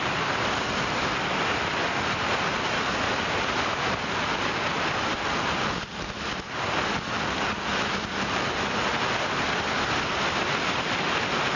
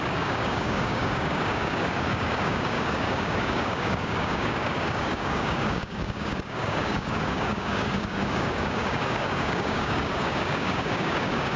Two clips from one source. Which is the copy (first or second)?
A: second